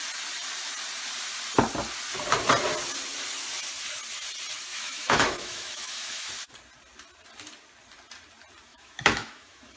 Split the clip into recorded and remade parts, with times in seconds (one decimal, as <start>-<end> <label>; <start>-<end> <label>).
0.0-4.7 recorded; 4.7-6.3 remade; 6.3-8.7 recorded; 8.7-9.8 remade